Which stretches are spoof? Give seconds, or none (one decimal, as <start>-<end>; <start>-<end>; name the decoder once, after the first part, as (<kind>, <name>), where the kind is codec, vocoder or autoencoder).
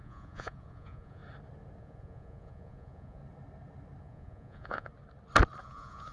0.0-1.2 (vocoder, Vocos); 1.8-3.2; 4.0-4.9; 5.6-6.1